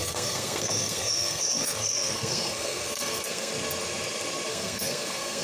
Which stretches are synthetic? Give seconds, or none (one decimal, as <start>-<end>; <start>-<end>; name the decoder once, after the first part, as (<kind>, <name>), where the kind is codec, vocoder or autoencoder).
0.0-3.5 (codec, SNAC); 4.5-5.4